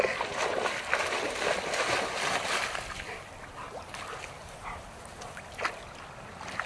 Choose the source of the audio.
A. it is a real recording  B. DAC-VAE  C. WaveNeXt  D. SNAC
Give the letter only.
A